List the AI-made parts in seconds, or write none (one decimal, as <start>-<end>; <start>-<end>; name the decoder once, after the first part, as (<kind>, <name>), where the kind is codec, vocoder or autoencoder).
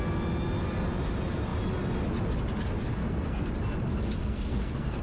3.0-3.5 (codec, SNAC); 4.2-5.0